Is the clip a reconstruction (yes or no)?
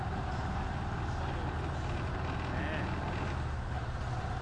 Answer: no